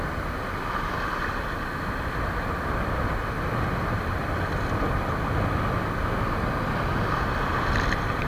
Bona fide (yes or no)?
yes